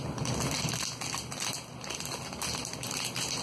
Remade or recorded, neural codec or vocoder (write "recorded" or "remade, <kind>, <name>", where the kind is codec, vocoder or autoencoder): recorded